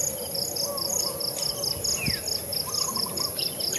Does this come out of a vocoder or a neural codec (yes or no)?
no